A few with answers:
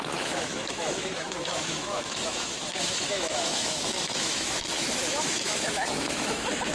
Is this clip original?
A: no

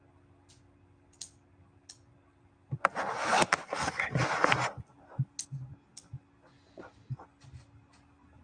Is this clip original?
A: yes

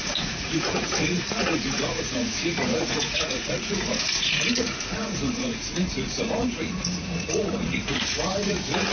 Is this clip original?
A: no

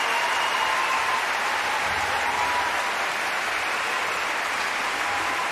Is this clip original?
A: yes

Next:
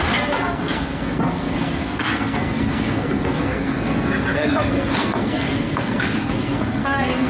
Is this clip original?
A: no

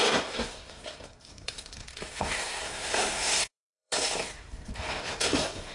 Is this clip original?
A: no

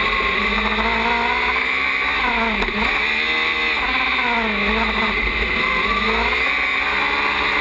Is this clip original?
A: yes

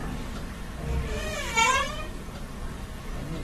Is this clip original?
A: no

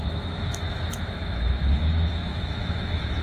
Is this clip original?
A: no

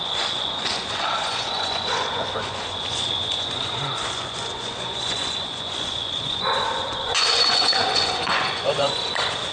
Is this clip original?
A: no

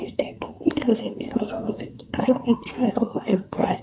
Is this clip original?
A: no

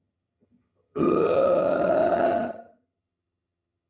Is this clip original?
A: no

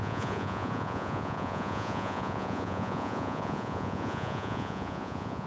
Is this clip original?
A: no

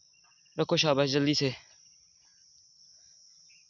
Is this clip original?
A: yes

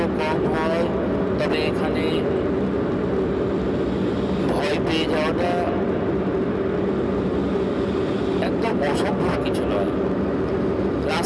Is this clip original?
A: yes